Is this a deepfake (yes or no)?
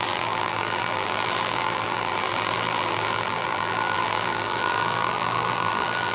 yes